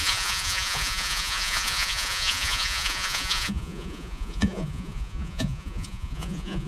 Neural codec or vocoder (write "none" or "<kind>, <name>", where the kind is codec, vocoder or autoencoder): vocoder, Vocos